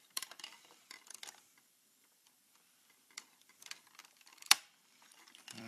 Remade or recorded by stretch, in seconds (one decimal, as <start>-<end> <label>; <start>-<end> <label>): 0.0-5.7 remade